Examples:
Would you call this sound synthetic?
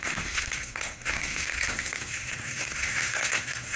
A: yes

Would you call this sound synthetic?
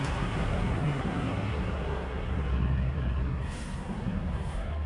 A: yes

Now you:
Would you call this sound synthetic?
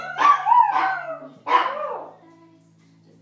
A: no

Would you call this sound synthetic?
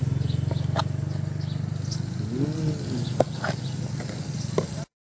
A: no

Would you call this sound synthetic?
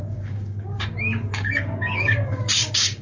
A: yes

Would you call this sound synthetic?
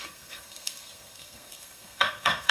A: yes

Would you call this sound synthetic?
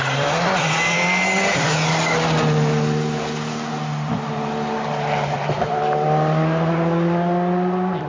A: no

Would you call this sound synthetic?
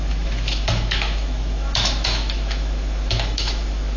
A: yes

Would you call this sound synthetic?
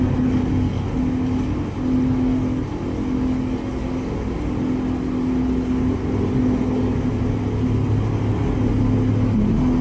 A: no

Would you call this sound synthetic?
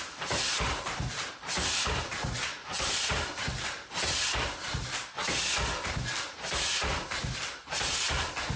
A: no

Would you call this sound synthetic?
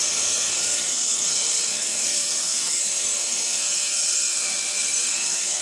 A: yes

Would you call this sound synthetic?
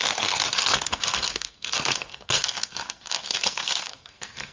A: yes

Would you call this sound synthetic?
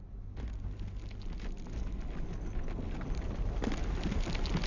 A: no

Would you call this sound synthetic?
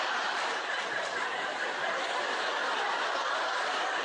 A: no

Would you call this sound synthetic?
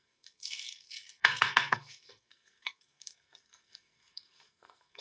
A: yes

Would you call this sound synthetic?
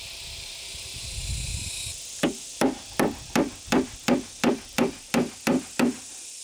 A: no